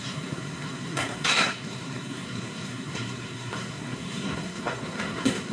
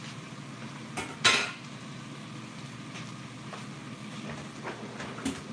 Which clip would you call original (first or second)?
second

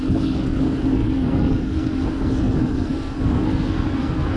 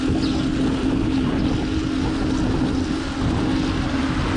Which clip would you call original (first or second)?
second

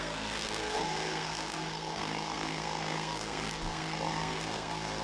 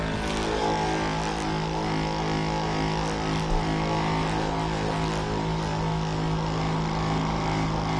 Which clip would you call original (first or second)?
second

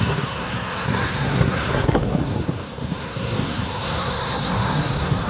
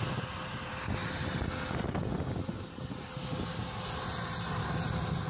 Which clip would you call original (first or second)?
second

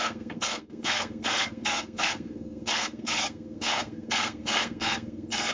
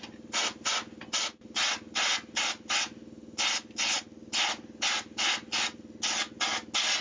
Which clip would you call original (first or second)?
second